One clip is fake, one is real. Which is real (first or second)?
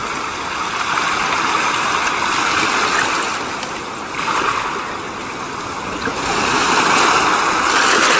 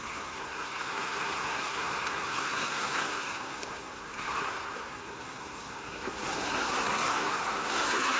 first